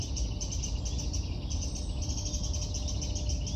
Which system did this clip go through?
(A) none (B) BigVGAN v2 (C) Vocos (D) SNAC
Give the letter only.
A